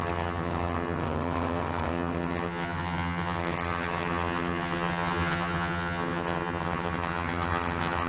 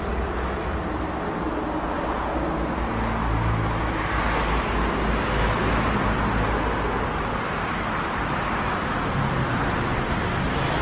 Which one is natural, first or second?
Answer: second